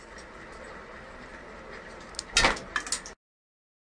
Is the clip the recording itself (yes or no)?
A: yes